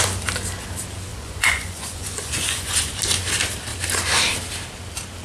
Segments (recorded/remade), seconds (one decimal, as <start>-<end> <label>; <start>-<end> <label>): 0.0-1.1 recorded; 1.1-3.0 remade; 3.0-5.2 recorded